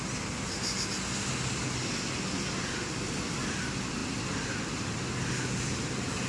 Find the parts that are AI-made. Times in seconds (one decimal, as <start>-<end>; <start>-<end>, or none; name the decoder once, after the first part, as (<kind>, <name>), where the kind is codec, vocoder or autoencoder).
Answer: none

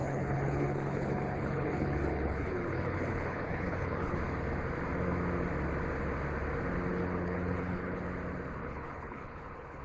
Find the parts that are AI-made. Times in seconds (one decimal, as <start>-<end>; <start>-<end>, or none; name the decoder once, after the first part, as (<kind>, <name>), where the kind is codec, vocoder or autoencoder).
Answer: 0.0-4.2 (codec, HILCodec); 6.9-8.0; 8.6-9.8

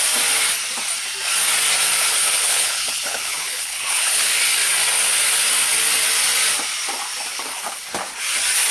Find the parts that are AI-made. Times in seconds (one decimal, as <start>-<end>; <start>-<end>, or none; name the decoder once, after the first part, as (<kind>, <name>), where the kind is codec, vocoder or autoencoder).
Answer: 2.0-4.4 (codec, HILCodec); 7.3-7.9

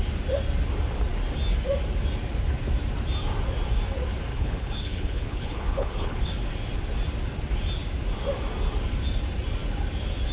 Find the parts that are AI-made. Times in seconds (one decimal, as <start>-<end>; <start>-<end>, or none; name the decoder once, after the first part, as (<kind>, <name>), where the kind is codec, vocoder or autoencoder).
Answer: 4.3-6.3 (codec, HILCodec)

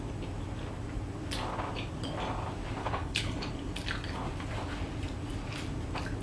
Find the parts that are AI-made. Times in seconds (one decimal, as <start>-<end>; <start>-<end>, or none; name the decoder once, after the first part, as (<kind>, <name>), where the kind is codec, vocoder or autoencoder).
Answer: 2.8-3.5 (codec, HILCodec)